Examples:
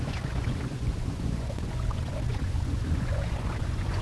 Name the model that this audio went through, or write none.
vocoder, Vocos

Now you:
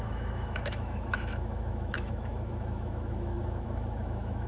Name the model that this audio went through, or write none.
autoencoder, DAC-VAE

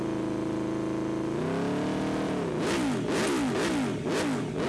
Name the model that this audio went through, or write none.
none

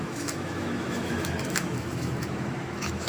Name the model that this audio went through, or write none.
autoencoder, DAC-VAE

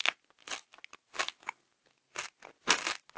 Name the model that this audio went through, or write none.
none